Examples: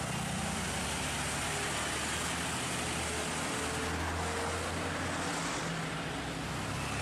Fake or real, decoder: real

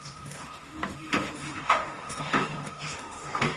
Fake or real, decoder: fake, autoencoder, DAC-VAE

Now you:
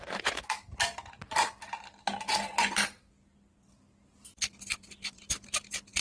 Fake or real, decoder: real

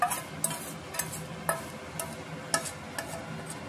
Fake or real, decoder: real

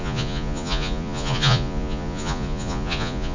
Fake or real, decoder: fake, vocoder, Vocos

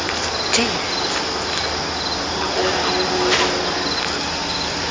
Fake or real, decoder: real